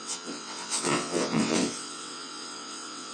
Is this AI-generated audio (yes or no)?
yes